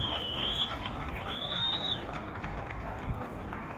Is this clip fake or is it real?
fake